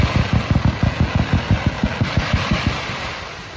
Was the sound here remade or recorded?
recorded